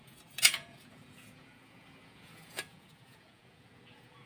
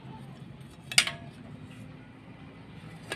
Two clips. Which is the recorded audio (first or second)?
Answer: second